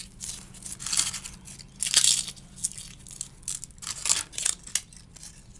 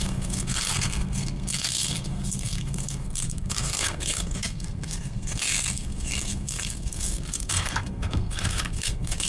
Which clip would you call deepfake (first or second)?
second